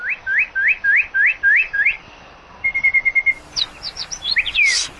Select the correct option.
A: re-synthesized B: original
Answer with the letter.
B